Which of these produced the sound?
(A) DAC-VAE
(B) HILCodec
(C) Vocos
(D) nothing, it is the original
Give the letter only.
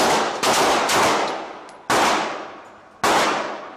D